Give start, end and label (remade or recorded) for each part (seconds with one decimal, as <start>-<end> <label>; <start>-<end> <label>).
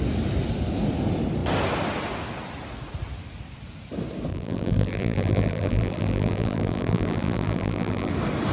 0.0-4.3 recorded; 4.3-8.1 remade; 8.1-8.5 recorded